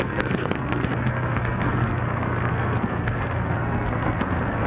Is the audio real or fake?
fake